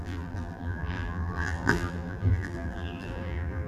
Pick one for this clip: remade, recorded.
remade